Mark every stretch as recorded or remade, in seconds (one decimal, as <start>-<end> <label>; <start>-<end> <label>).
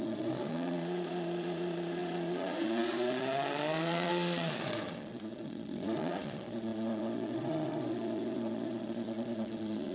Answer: 0.0-9.9 remade